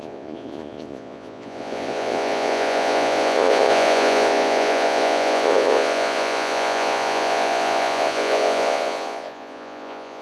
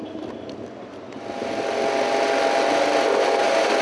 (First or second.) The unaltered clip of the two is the second